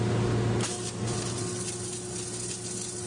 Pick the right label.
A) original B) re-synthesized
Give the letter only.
A